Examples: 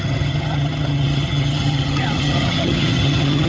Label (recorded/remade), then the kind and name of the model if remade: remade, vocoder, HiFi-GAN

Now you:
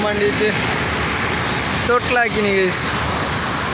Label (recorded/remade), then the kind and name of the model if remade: recorded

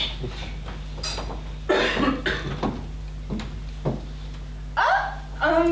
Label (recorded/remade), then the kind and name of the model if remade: recorded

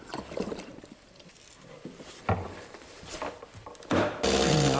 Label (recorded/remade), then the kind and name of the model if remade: remade, vocoder, BigVGAN v2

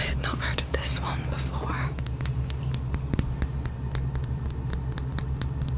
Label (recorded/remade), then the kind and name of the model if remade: recorded